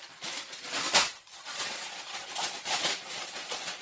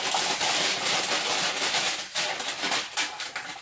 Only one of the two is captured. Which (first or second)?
second